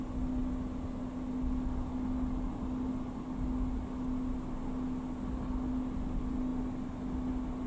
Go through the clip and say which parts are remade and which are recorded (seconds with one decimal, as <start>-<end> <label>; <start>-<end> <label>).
0.0-7.7 recorded